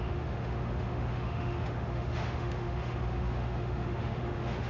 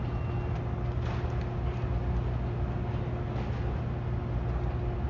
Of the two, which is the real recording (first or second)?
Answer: second